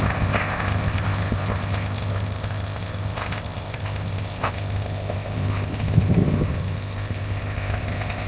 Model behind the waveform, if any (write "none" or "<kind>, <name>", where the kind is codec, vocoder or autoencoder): codec, ZipCodec